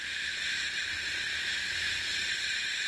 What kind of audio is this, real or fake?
real